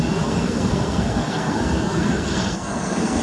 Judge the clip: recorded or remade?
remade